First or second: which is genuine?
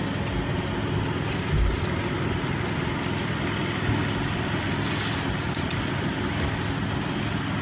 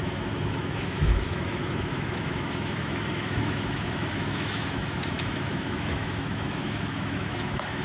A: first